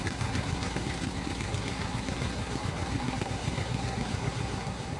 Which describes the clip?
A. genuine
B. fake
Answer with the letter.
B